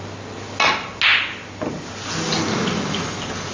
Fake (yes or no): no